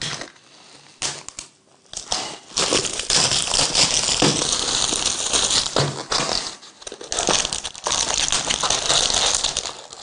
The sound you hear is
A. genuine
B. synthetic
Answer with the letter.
A